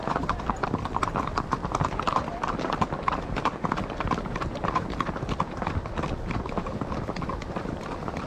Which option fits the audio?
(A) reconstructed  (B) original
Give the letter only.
B